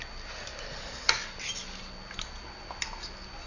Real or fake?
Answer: real